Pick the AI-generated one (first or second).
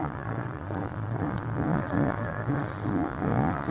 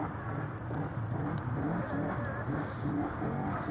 first